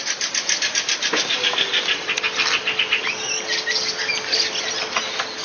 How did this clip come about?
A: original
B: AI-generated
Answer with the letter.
A